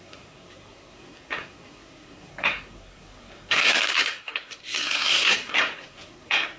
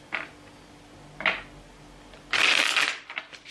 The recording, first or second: second